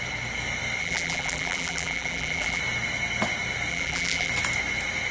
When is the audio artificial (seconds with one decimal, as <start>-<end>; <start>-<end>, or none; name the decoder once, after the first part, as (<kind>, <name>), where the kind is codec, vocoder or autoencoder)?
0.8-2.6 (vocoder, BigVGAN v2); 3.7-4.3